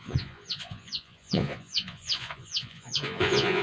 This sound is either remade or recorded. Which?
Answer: remade